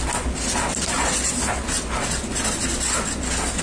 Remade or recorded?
recorded